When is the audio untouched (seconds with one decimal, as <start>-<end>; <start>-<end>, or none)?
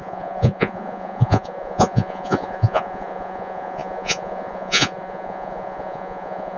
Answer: none